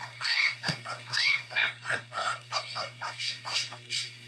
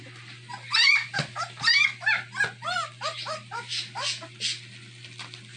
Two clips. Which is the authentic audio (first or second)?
second